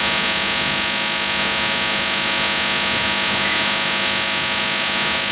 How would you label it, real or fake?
real